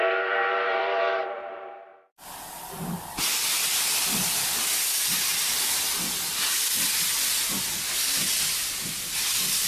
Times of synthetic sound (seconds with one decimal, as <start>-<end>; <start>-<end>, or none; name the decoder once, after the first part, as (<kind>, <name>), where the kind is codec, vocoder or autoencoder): 0.0-1.9 (vocoder, BigVGAN v2); 3.1-9.7